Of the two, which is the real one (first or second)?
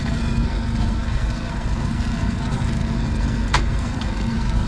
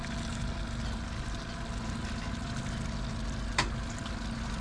second